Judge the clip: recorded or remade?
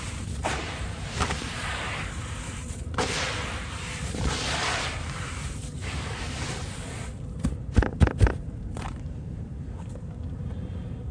remade